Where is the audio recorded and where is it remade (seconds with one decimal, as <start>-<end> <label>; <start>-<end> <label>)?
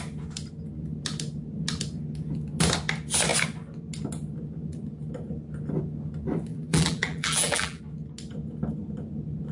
0.0-6.5 recorded; 6.5-7.8 remade; 7.8-9.5 recorded